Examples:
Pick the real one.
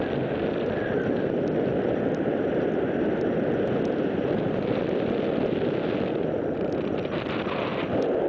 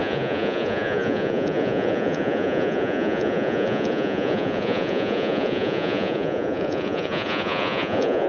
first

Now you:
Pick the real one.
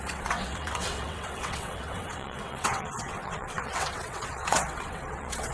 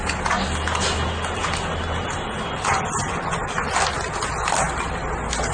second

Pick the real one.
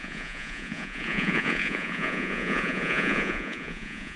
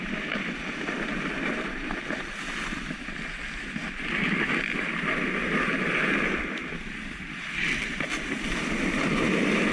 second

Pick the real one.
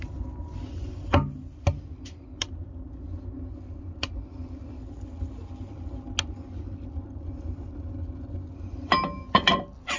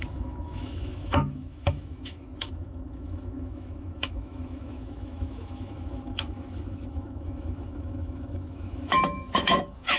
first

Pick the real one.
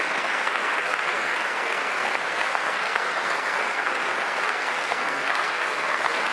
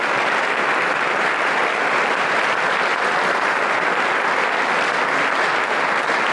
second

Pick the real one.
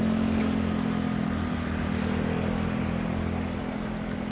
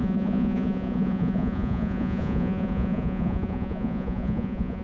first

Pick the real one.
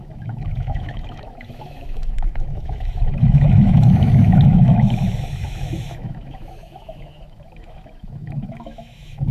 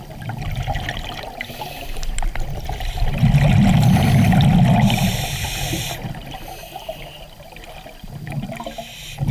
second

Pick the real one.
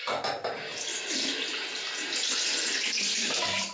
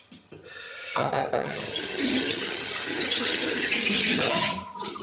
first